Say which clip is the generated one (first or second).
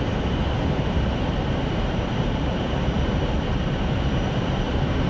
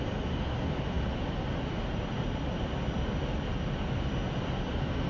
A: first